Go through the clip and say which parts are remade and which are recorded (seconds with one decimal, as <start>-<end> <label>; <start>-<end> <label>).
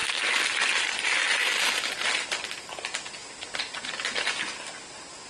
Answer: 0.0-0.6 remade; 0.6-5.3 recorded